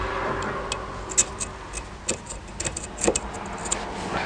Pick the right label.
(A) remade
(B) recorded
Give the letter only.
B